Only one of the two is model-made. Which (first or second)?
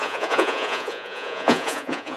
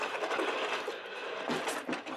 first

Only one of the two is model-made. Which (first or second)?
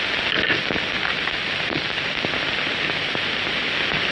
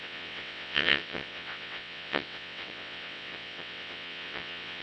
second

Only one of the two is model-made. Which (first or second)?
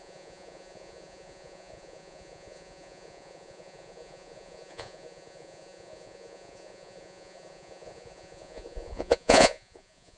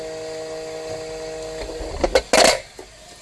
first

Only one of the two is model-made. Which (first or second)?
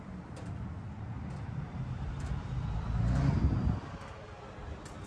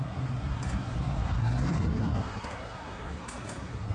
second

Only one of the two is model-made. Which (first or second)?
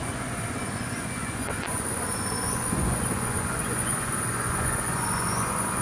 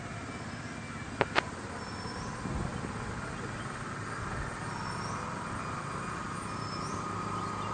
first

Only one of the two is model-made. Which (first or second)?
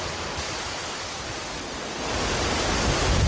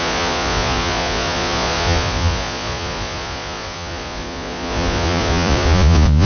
second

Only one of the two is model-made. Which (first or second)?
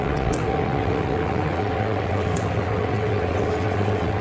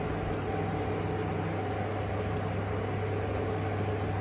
first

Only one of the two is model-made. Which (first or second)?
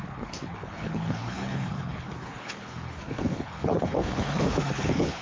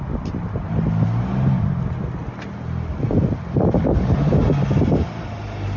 first